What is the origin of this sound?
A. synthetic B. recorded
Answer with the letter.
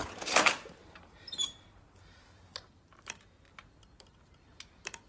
A